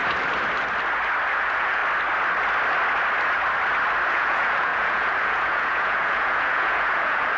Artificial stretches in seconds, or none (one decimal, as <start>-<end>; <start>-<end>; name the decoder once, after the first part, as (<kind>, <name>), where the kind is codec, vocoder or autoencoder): 1.3-1.8 (vocoder, Vocos); 4.1-7.4